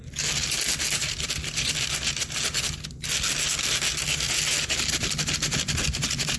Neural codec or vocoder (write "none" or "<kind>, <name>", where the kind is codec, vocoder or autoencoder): none